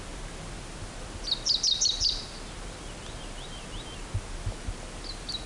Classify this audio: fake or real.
real